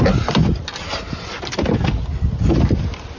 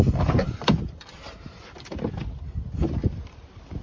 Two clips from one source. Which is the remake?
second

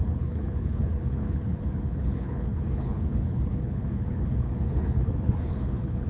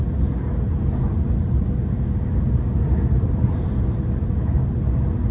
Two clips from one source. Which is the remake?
first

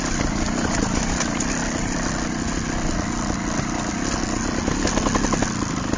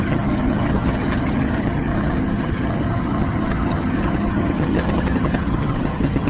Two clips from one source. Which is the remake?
second